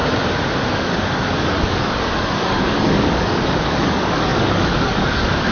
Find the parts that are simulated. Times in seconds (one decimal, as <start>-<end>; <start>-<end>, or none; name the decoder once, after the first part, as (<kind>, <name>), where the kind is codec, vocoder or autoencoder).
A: 0.7-5.5 (codec, DAC)